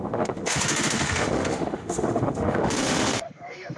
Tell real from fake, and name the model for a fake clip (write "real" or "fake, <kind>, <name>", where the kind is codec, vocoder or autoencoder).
fake, autoencoder, DAC-VAE